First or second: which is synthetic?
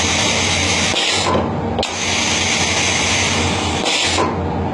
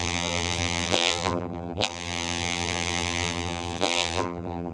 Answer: second